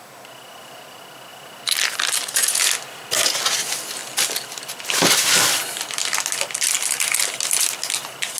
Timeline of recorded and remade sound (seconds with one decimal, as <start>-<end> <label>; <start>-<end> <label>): 0.0-8.4 recorded